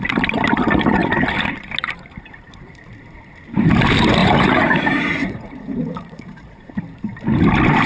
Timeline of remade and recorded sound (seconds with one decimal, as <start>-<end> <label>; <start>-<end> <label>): 0.0-4.2 recorded; 4.2-6.7 remade; 6.7-7.9 recorded